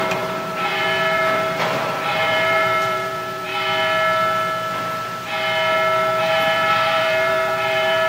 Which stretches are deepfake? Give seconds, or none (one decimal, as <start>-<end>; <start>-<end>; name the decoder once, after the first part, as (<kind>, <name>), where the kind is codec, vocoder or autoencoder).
0.0-3.5 (vocoder, BigVGAN v2); 6.2-8.1